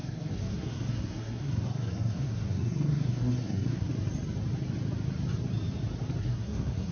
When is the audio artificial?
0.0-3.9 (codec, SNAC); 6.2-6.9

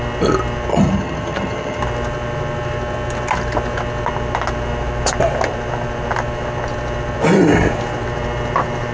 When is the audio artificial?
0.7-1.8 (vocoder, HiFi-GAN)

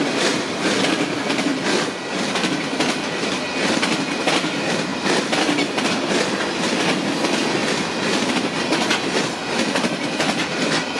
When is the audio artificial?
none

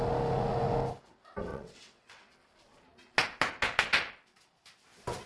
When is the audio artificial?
1.5-2.3 (vocoder, WaveNeXt)

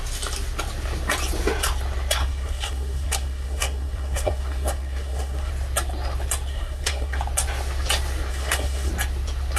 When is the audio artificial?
2.2-5.5 (codec, SNAC); 6.5-7.2; 8.3-8.9